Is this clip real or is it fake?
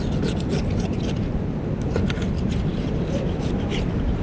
real